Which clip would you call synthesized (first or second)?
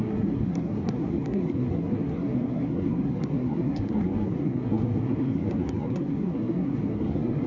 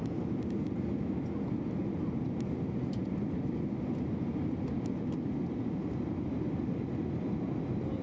first